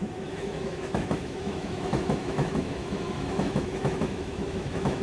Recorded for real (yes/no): no